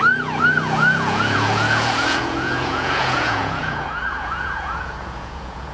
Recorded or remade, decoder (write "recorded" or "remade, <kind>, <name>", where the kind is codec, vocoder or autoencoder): remade, vocoder, Vocos